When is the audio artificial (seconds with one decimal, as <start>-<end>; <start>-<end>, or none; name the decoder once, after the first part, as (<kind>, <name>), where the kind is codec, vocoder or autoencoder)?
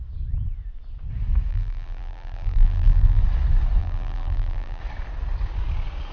1.5-3.2 (vocoder, BigVGAN v2); 3.8-4.8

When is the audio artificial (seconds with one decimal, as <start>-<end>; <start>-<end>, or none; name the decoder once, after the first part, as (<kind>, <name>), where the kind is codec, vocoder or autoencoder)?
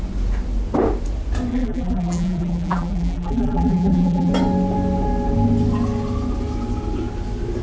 1.5-4.3 (vocoder, BigVGAN v2)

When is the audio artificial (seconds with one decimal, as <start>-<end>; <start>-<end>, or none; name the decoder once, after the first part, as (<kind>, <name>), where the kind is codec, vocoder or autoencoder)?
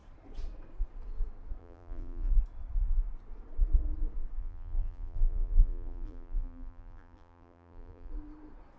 1.6-2.3 (vocoder, BigVGAN v2); 4.4-8.1